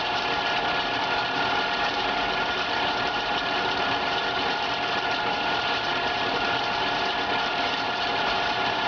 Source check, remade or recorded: remade